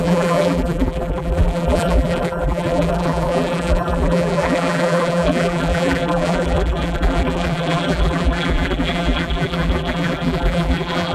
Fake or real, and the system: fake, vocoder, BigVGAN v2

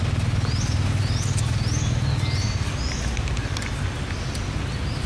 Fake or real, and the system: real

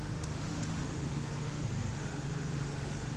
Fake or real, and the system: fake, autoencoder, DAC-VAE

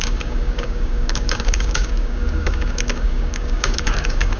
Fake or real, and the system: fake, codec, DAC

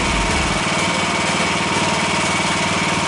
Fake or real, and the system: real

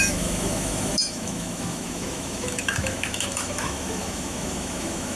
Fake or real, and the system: fake, autoencoder, DAC-VAE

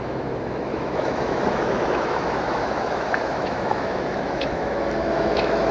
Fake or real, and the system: fake, autoencoder, DAC-VAE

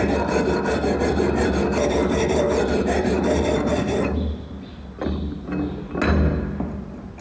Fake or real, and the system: real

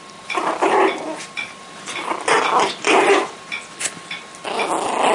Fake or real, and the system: real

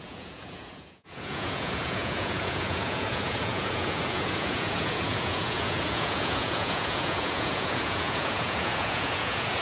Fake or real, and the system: fake, vocoder, Vocos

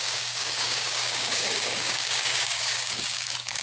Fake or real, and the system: fake, codec, DAC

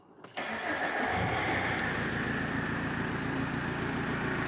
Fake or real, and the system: real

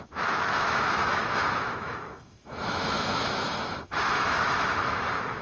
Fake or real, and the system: fake, autoencoder, DAC-VAE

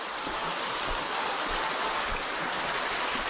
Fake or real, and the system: fake, vocoder, BigVGAN v2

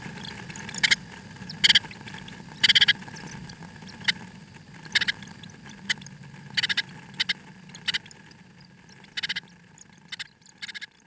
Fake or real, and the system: real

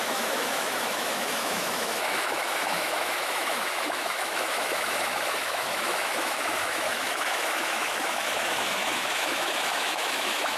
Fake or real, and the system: fake, autoencoder, DAC-VAE